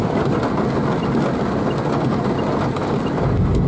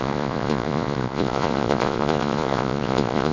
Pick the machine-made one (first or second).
second